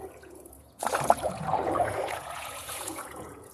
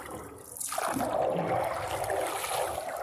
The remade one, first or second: first